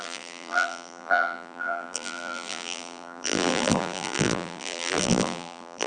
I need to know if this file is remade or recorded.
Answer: remade